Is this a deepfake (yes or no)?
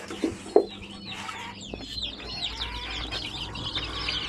no